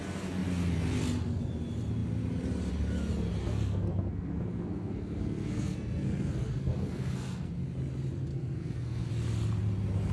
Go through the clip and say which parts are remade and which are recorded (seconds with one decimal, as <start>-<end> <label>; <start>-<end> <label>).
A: 0.0-3.4 recorded; 3.4-7.5 remade; 7.5-8.3 recorded; 8.3-9.1 remade; 9.1-10.1 recorded